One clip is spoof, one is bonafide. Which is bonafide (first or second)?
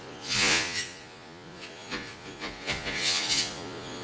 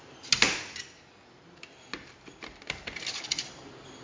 second